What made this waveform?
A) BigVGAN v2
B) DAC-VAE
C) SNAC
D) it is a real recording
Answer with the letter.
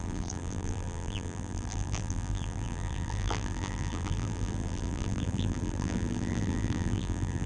A